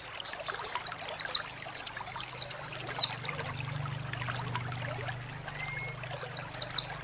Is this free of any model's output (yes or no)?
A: yes